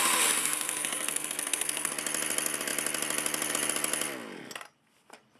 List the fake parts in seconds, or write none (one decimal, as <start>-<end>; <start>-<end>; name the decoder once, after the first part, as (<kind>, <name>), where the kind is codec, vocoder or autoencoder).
0.4-1.9 (codec, SNAC)